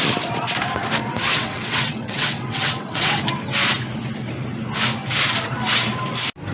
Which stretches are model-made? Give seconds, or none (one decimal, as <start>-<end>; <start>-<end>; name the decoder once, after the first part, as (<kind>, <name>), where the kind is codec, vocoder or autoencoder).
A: 1.3-3.2 (vocoder, WaveNeXt)